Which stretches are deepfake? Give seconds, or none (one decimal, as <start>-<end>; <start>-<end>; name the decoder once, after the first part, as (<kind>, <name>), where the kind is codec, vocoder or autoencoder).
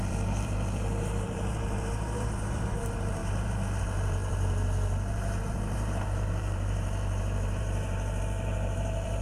0.0-9.2 (vocoder, BigVGAN v2)